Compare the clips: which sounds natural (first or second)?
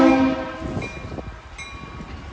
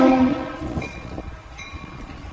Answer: first